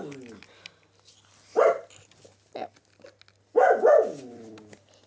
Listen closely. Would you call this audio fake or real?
real